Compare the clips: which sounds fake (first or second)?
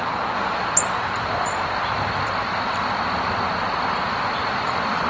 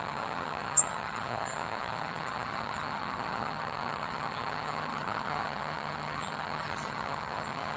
second